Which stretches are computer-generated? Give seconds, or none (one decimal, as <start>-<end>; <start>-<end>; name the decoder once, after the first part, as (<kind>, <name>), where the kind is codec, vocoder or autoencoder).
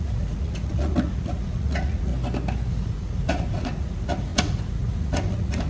0.0-2.1 (vocoder, Vocos); 2.7-5.7